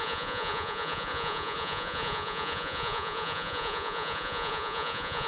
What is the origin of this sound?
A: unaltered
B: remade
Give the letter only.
B